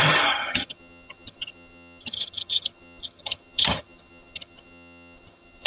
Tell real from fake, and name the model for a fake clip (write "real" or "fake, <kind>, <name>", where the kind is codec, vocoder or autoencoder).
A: fake, vocoder, HiFi-GAN